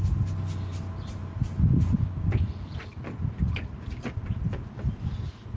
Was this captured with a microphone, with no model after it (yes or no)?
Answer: yes